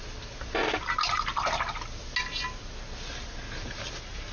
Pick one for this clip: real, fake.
real